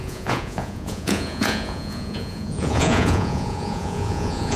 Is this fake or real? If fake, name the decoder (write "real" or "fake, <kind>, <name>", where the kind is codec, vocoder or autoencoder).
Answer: fake, vocoder, Vocos